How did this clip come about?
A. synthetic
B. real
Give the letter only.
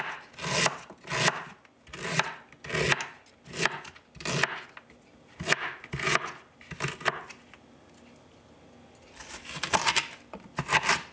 B